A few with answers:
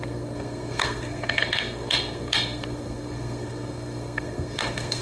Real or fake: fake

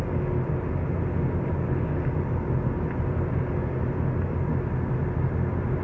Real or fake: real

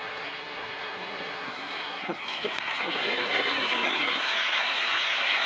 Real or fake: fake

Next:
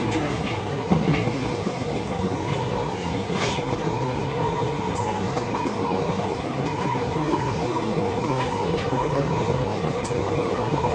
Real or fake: fake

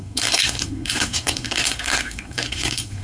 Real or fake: fake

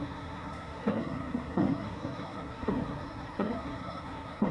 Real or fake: fake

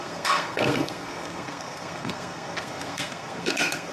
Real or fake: fake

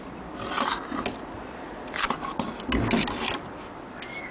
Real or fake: real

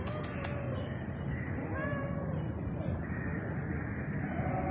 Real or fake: real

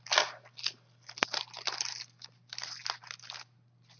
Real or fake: real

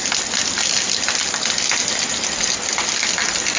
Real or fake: real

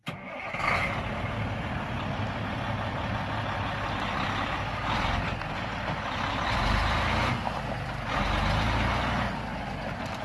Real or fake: real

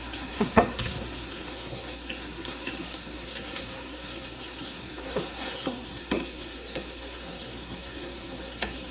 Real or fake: fake